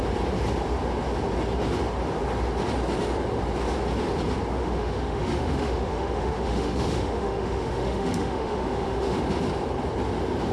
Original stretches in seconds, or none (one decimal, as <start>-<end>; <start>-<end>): 0.0-4.6; 9.2-10.5